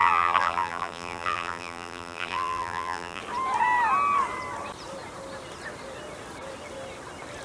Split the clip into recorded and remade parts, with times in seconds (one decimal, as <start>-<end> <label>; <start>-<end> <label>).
0.0-3.2 remade; 3.2-7.4 recorded